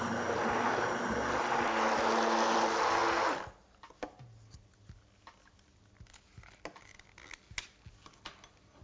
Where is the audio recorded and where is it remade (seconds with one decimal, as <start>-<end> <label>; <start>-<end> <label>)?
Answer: 0.0-8.8 recorded